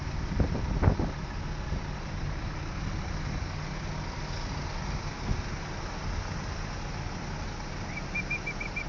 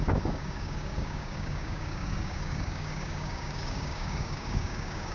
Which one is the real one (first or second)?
first